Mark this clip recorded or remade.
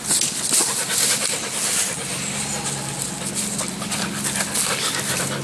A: recorded